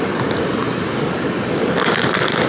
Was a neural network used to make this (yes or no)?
no